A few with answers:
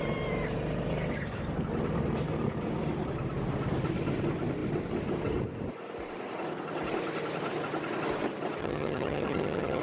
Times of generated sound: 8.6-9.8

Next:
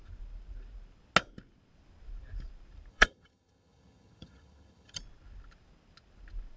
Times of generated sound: 2.9-5.0